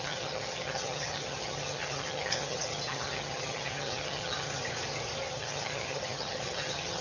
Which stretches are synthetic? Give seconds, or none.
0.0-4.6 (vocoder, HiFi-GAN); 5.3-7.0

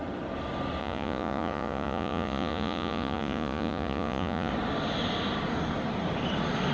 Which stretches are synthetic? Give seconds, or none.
0.8-4.5 (vocoder, Vocos)

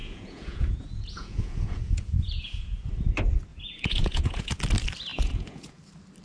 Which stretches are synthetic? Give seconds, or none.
0.0-2.9 (vocoder, Vocos); 3.5-4.6; 5.1-5.8

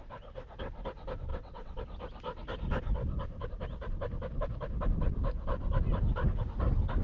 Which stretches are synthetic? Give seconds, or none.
1.3-1.8 (vocoder, WaveNeXt)

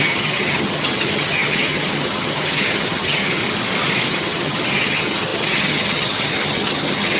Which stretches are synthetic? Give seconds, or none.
0.0-3.4 (vocoder, HiFi-GAN); 4.1-7.2

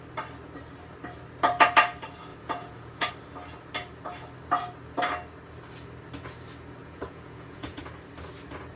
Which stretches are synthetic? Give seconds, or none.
2.3-3.1 (vocoder, Vocos); 6.8-7.8

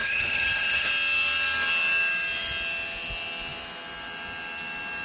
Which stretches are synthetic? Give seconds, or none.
0.0-0.9 (codec, HILCodec)